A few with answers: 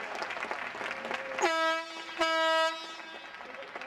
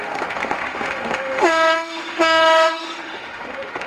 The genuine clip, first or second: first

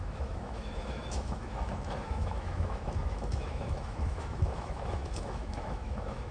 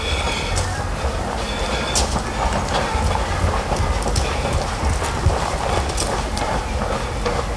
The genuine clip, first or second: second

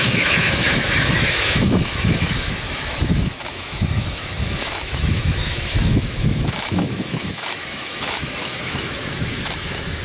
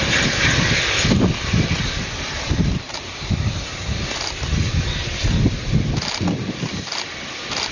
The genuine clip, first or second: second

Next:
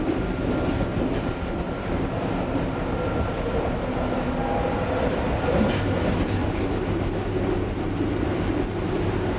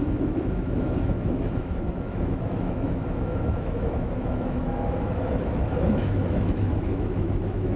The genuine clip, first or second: first